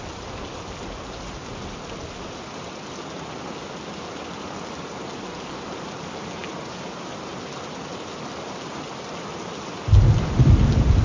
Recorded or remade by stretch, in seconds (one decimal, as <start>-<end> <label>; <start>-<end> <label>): 0.0-6.4 recorded; 6.4-7.3 remade; 7.3-11.0 recorded